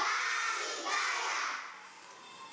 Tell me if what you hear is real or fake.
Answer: real